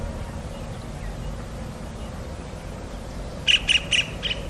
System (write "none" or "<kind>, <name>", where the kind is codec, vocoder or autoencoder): none